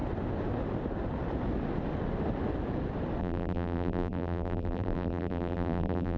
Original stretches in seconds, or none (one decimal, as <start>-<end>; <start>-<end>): 0.0-3.2